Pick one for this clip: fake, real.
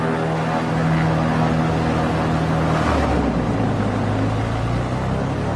real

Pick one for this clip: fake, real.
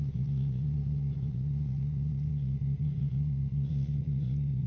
fake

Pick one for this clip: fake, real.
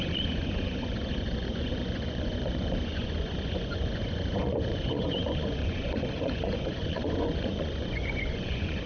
fake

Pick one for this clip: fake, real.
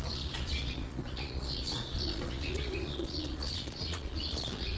fake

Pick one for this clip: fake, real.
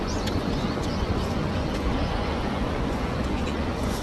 fake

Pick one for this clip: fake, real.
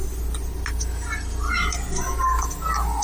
real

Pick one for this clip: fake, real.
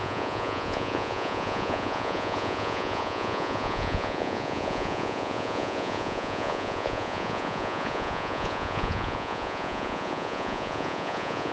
fake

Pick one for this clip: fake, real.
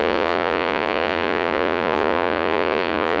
fake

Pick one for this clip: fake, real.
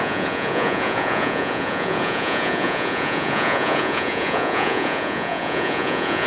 fake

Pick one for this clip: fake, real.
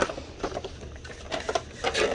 real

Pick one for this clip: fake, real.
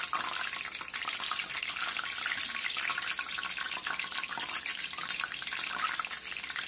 real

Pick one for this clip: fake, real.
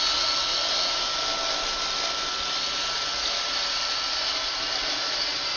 real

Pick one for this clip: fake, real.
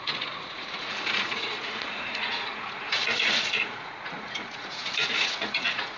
fake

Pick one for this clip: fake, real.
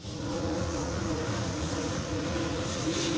fake